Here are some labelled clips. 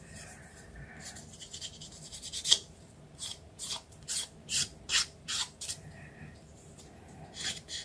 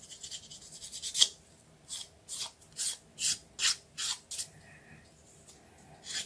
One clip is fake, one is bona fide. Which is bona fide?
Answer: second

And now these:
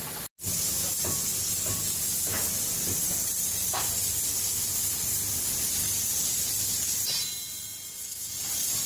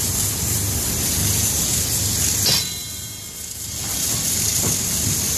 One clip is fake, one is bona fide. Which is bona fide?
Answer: first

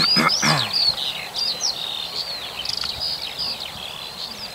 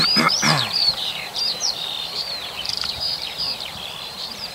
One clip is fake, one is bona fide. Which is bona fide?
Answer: first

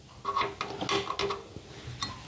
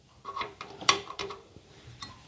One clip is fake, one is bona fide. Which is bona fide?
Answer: first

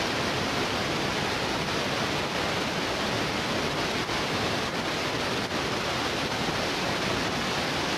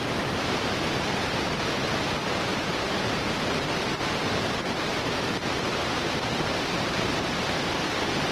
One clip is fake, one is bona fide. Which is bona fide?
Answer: first